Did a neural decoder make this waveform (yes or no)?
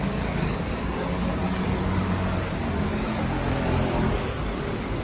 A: yes